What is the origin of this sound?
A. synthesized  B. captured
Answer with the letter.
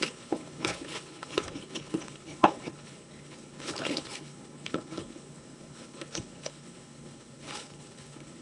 A